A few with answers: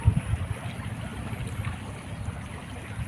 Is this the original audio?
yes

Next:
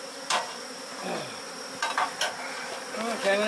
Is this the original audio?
yes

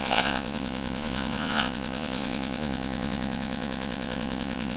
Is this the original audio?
no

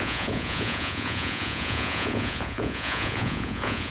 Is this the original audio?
no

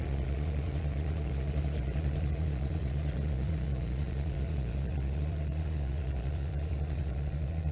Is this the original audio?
no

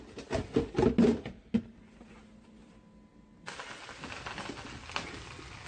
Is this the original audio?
yes